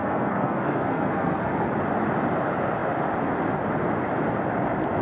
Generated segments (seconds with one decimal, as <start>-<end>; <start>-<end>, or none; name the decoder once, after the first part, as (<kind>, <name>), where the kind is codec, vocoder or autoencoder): 0.0-1.7 (codec, SNAC)